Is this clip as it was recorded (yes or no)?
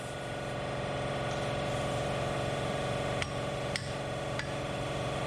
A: yes